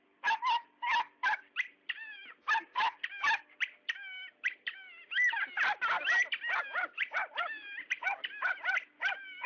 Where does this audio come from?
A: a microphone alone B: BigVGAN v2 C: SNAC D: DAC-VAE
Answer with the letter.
A